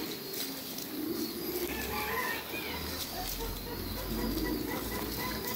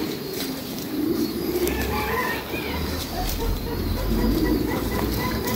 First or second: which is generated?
second